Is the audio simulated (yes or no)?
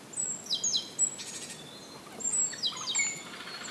no